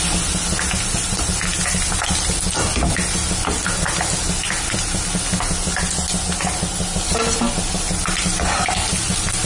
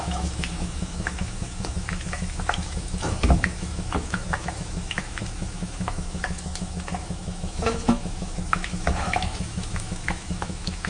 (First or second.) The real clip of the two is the first